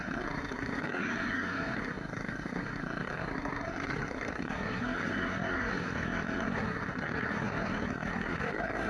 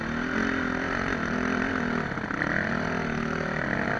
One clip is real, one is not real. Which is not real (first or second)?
first